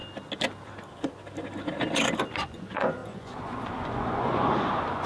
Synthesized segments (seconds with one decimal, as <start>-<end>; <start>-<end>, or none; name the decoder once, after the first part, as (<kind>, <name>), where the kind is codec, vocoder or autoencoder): 2.3-5.1 (vocoder, Vocos)